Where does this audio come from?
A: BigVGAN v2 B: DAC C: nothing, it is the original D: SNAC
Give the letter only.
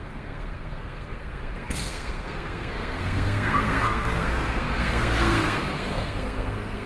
D